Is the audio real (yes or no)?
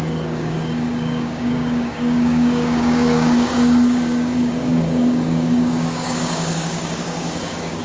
no